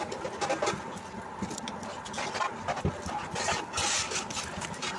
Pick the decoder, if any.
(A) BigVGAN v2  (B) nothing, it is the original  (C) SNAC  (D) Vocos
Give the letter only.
B